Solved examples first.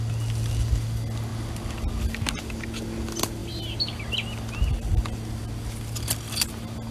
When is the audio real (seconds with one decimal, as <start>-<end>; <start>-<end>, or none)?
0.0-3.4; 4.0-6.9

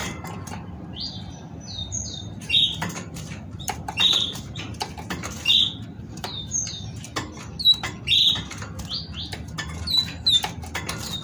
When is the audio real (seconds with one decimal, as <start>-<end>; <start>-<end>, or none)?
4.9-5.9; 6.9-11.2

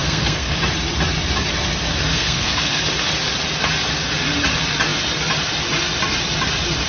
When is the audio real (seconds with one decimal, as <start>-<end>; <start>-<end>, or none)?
0.6-2.1; 2.8-6.9

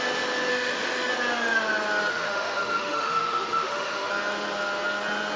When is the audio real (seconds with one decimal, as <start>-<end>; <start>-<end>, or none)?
0.0-0.5; 1.1-2.1; 4.1-5.4

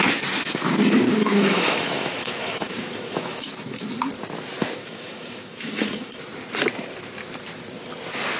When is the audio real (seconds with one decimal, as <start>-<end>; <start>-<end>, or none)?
0.0-1.2; 3.5-4.8; 6.2-8.4